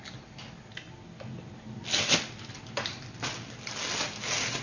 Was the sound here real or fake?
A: real